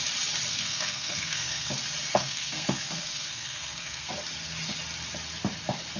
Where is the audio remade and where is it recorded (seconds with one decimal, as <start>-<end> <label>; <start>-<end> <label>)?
0.0-0.5 recorded; 0.5-1.7 remade; 1.7-2.1 recorded; 2.1-4.1 remade; 4.1-6.0 recorded